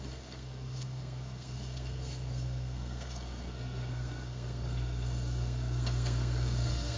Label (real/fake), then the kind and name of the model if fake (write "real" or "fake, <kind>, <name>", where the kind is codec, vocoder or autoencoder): fake, codec, SNAC